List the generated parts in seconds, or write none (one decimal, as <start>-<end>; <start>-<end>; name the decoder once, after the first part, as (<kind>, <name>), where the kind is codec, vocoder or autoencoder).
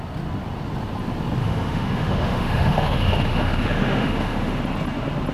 1.4-4.6 (autoencoder, DAC-VAE)